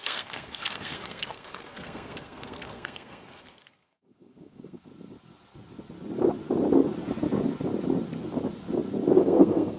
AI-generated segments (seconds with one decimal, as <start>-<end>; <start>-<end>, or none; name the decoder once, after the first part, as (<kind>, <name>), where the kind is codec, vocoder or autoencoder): 0.0-4.9 (codec, SNAC); 9.2-9.8